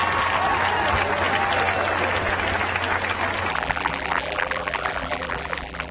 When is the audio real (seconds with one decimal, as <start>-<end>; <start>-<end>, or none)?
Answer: 0.0-3.5